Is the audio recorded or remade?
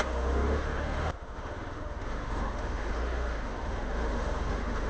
remade